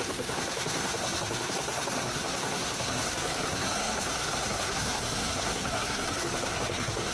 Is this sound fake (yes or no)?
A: yes